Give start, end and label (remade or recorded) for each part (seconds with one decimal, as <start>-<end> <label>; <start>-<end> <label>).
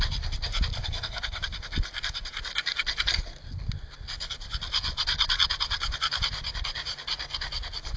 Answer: 0.0-0.8 recorded; 0.8-1.4 remade; 1.4-8.0 recorded